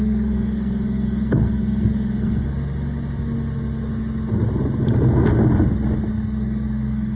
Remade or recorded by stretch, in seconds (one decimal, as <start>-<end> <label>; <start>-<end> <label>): 0.0-2.5 remade; 2.5-6.1 recorded; 6.1-7.2 remade